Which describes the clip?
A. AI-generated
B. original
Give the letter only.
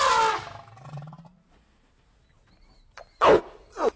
B